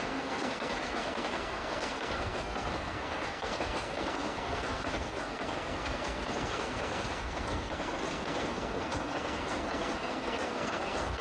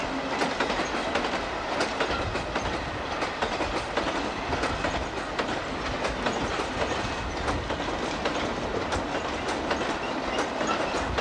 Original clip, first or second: second